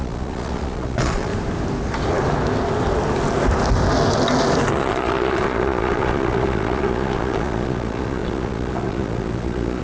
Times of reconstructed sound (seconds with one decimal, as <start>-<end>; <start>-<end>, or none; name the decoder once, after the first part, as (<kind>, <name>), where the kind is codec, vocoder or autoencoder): 0.0-1.3 (vocoder, Vocos); 4.7-9.8